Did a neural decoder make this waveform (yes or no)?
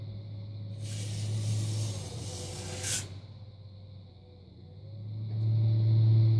no